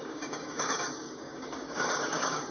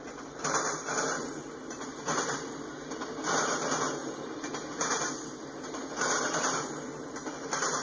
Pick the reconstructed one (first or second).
first